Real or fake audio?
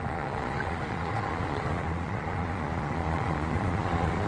fake